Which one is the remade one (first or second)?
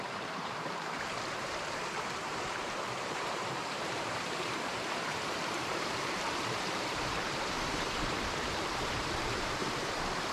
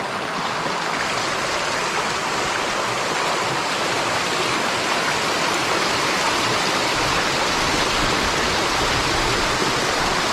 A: first